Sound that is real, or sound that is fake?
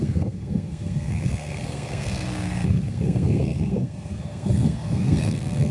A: fake